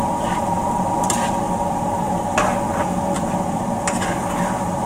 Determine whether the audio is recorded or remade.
remade